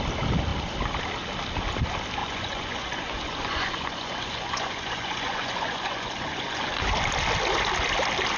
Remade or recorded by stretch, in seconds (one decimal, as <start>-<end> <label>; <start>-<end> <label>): 0.0-2.2 recorded; 2.2-6.7 remade; 6.7-8.4 recorded